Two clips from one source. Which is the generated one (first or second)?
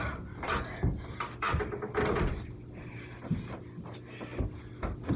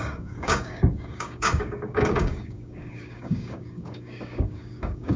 second